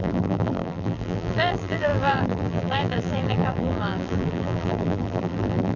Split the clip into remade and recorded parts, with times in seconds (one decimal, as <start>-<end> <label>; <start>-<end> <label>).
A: 0.0-5.8 remade